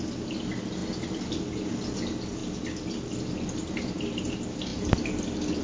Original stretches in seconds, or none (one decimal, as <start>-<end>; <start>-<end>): 0.0-5.6